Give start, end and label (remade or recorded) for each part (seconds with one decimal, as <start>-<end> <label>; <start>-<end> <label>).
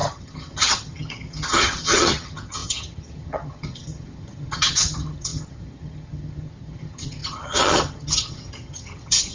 0.0-9.3 remade